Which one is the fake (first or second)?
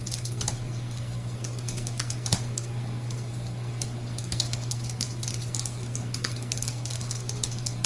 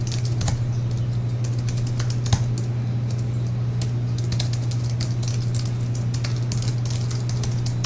first